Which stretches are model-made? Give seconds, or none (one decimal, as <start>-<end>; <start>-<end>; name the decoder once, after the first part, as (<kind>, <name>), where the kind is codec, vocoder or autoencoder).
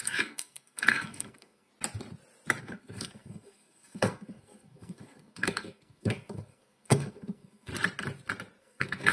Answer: 0.0-1.7 (codec, SNAC); 2.6-7.7; 8.6-9.1